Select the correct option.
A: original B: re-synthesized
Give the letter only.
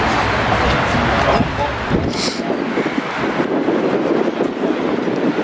A